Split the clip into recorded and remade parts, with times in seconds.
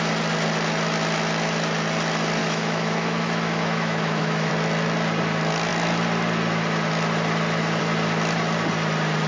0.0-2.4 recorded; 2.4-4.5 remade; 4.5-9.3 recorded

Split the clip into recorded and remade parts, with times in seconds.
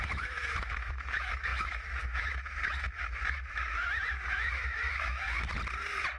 0.0-5.5 remade; 5.5-6.2 recorded